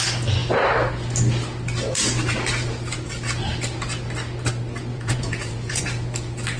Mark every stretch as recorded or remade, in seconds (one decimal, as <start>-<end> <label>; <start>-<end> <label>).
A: 0.0-4.9 recorded; 4.9-5.8 remade; 5.8-6.6 recorded